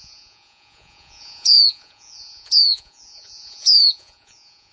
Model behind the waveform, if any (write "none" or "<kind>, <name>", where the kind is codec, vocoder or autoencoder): vocoder, Vocos